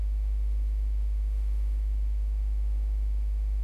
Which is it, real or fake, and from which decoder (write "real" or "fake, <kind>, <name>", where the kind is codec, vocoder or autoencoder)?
fake, autoencoder, DAC-VAE